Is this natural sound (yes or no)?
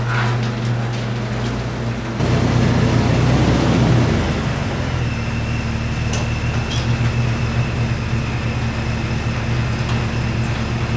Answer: yes